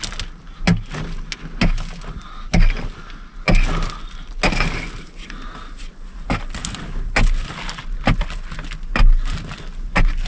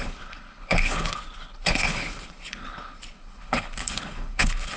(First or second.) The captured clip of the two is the first